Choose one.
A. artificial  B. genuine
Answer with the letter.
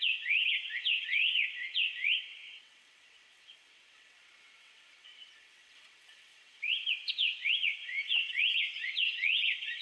A